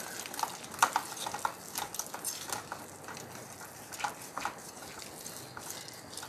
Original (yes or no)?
yes